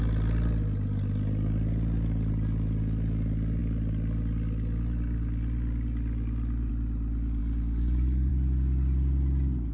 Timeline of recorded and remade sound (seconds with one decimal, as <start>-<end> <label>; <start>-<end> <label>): 0.0-7.4 recorded; 7.4-8.3 remade; 8.3-9.7 recorded